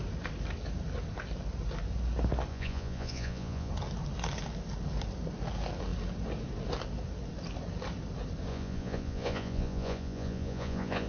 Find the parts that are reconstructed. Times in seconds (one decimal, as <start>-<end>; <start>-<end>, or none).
2.5-3.7; 8.5-11.1